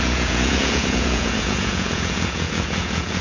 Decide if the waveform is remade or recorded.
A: remade